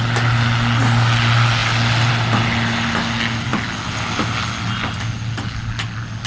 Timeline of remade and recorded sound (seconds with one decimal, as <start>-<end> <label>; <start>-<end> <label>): 0.0-6.3 recorded